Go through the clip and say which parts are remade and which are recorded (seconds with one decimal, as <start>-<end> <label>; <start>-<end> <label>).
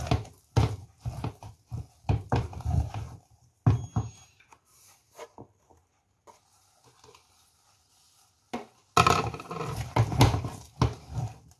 0.0-11.6 recorded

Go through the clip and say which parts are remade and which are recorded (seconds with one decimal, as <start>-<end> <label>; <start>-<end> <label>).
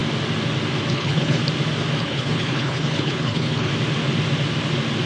0.0-0.9 recorded; 0.9-1.4 remade; 1.4-2.0 recorded; 2.0-3.7 remade; 3.7-5.1 recorded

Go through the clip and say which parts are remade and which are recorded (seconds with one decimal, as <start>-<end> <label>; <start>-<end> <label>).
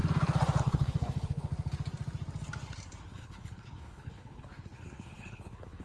0.0-0.6 recorded; 0.6-1.5 remade; 1.5-3.0 recorded; 3.0-5.8 remade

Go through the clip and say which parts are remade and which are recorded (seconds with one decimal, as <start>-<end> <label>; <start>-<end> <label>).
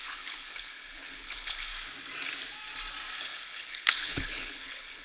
0.0-1.7 remade; 1.7-3.2 recorded; 3.2-5.0 remade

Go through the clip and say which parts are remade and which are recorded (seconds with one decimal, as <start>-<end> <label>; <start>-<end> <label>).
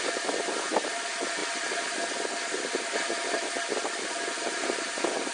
0.0-5.3 recorded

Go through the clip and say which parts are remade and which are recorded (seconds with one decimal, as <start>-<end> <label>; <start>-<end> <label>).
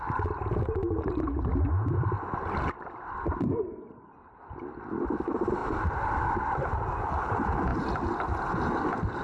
0.0-9.2 recorded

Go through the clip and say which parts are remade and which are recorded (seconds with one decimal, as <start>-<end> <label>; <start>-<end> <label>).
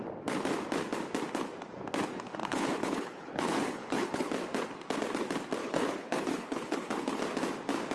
0.0-2.4 recorded; 2.4-4.3 remade; 4.3-5.6 recorded; 5.6-7.2 remade; 7.2-7.9 recorded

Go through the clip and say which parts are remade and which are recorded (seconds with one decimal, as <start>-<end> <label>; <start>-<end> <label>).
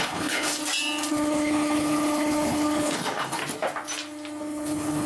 0.0-0.6 remade; 0.6-1.1 recorded; 1.1-3.4 remade; 3.4-4.4 recorded; 4.4-5.1 remade